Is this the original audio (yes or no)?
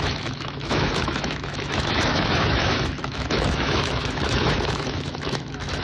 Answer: no